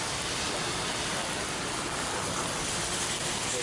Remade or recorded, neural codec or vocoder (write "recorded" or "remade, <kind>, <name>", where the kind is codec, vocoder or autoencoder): recorded